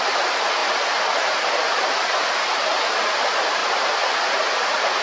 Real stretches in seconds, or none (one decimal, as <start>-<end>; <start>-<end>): 0.0-5.0